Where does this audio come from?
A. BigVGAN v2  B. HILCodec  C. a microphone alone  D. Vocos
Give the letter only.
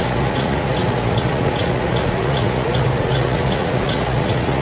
D